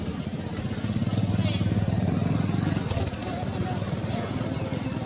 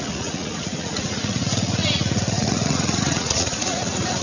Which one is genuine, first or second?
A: first